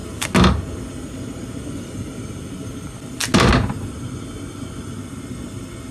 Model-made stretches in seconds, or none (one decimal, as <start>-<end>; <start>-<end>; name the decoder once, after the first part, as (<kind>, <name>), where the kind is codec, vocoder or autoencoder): none